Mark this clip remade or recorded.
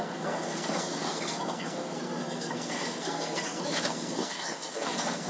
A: remade